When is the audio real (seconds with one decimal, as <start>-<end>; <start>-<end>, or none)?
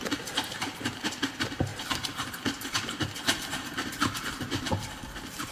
none